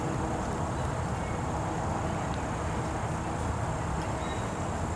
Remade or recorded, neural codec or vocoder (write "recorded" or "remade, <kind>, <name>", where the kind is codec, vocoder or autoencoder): recorded